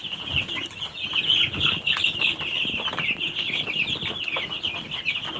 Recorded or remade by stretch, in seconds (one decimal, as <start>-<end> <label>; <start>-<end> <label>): 0.0-5.4 recorded